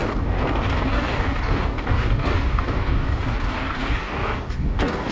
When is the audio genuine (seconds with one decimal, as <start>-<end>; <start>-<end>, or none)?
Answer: none